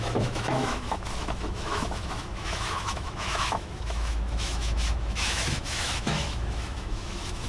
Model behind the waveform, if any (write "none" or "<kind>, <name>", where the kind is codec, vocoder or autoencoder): autoencoder, DAC-VAE